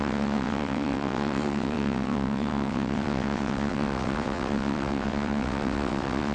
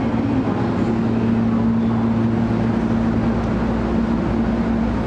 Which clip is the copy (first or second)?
first